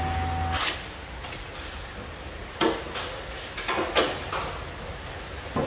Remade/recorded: recorded